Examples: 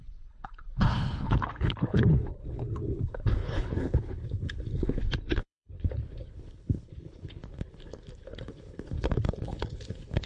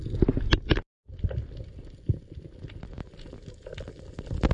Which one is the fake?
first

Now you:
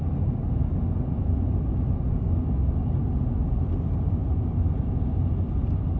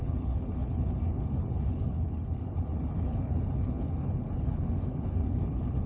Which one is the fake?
second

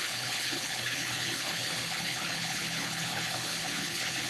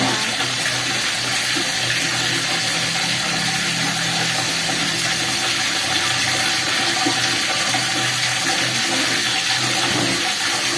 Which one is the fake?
first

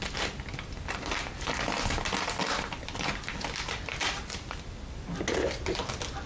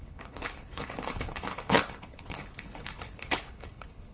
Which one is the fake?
second